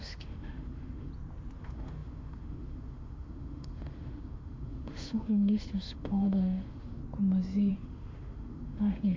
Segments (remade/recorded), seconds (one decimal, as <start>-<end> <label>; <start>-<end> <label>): 0.0-1.1 remade; 1.1-1.6 recorded; 1.6-7.0 remade; 7.0-7.7 recorded; 7.7-9.2 remade